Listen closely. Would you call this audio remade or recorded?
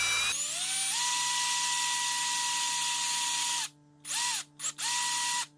recorded